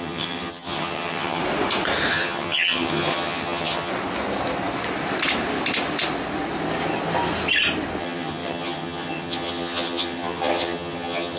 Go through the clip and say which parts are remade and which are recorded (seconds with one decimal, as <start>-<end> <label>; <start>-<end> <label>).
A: 0.0-1.4 remade; 1.4-2.1 recorded; 2.1-3.9 remade; 3.9-8.0 recorded; 8.0-11.4 remade

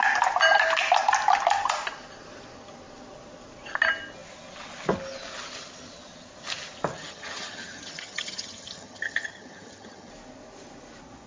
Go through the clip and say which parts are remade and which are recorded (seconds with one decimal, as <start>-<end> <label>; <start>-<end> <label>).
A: 0.0-6.9 recorded; 6.9-10.1 remade; 10.1-11.3 recorded

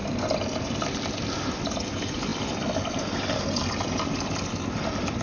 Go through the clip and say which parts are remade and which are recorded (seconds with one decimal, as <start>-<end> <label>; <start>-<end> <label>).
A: 0.0-5.2 recorded

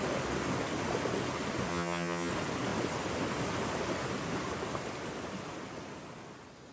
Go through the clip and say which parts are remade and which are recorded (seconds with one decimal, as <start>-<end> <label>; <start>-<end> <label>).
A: 0.0-1.7 recorded; 1.7-2.3 remade; 2.3-6.7 recorded